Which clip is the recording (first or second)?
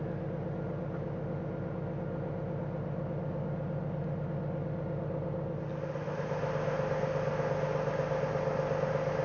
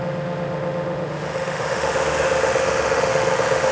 first